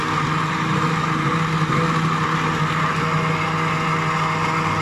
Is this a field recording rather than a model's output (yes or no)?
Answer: yes